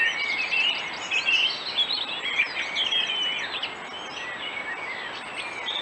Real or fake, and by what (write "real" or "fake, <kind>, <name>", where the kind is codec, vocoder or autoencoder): real